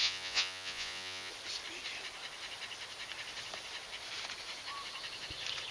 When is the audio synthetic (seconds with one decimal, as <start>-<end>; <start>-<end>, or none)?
0.0-1.3

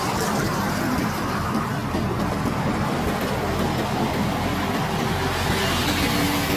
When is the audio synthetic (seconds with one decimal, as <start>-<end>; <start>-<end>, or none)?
none